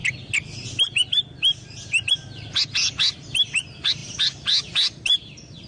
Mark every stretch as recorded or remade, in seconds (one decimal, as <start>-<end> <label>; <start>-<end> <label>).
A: 0.0-5.7 recorded

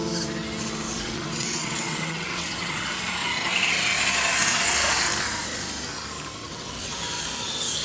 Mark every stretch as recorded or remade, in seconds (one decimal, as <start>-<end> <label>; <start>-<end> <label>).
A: 0.0-0.9 recorded; 0.9-2.9 remade; 2.9-6.4 recorded; 6.4-7.0 remade; 7.0-7.8 recorded

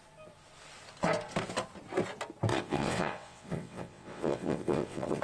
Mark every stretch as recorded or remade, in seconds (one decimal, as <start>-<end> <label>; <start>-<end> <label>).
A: 0.0-2.5 recorded; 2.5-5.2 remade

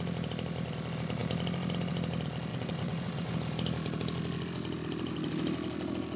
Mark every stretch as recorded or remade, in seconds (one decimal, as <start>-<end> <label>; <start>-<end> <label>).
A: 0.0-2.5 recorded; 2.5-3.3 remade; 3.3-6.2 recorded